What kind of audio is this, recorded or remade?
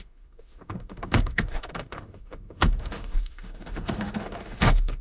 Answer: remade